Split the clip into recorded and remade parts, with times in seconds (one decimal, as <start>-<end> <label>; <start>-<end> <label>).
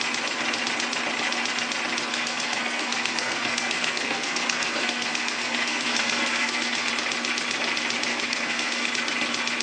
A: 0.0-2.1 recorded; 2.1-6.9 remade; 6.9-8.1 recorded; 8.1-8.9 remade; 8.9-9.6 recorded